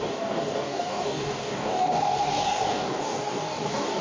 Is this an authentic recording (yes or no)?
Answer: no